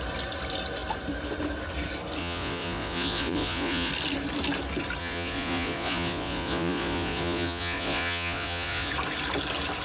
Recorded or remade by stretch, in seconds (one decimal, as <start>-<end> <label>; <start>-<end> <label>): 0.0-2.2 recorded; 2.2-3.9 remade; 3.9-5.0 recorded; 5.0-8.9 remade; 8.9-9.8 recorded